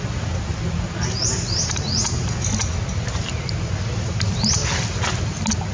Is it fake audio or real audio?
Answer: real